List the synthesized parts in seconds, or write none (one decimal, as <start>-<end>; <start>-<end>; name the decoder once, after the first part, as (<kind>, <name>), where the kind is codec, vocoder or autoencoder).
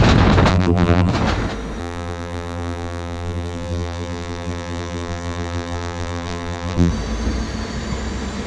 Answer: 0.5-1.1 (vocoder, BigVGAN v2); 1.8-6.9